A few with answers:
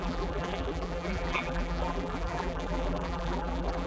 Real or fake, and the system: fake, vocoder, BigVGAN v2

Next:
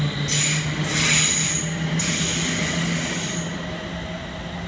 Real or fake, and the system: real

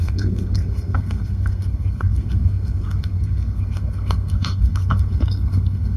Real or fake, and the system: fake, codec, SNAC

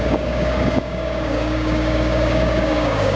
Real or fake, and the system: fake, codec, DAC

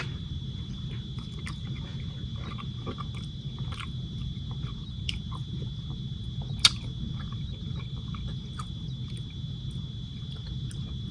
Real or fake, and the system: real